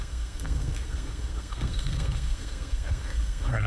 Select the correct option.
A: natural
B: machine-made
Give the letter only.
B